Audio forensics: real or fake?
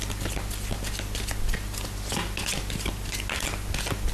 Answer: real